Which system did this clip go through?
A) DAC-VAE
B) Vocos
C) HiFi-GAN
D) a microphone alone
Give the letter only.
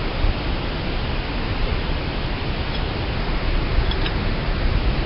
D